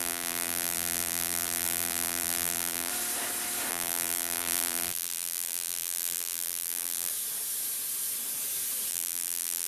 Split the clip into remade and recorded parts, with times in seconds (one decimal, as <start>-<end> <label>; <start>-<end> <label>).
0.0-2.9 remade; 2.9-3.7 recorded; 3.7-7.1 remade; 7.1-8.9 recorded; 8.9-9.7 remade